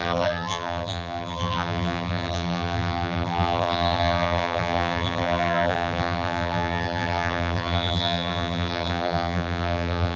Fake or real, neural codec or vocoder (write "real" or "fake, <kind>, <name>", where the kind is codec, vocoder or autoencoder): fake, vocoder, BigVGAN v2